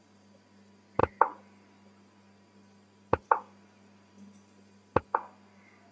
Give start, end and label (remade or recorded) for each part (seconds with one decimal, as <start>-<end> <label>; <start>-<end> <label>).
0.0-5.9 recorded